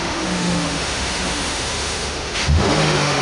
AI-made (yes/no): yes